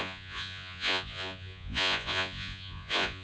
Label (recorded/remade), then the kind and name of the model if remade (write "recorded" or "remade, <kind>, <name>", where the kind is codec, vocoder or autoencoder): remade, vocoder, Vocos